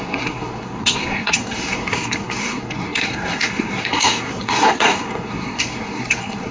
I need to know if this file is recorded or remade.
remade